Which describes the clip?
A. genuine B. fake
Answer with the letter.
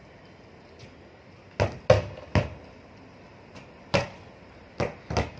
A